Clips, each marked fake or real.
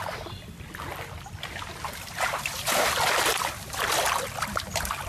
real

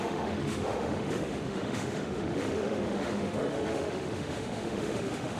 fake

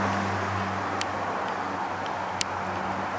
real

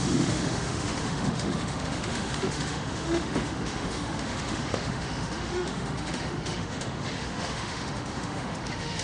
fake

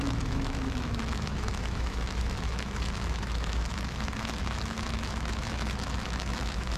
fake